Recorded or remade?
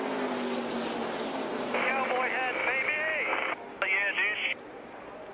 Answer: recorded